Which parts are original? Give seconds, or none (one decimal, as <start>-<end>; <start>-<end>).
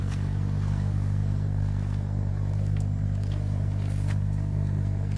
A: none